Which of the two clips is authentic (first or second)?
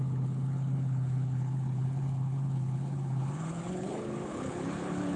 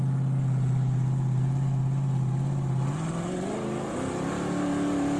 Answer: second